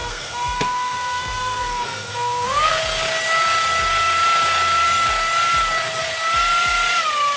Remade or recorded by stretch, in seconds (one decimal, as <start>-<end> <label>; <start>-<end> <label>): 0.0-2.8 remade; 2.8-7.4 recorded